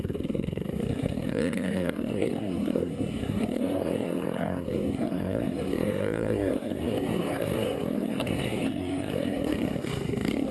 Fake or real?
fake